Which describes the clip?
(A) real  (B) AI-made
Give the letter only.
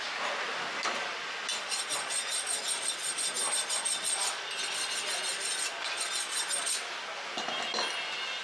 A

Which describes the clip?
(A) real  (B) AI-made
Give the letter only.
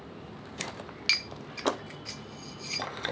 A